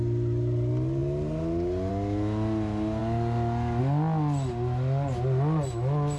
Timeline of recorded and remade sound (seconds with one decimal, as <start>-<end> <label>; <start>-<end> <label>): 0.0-6.2 recorded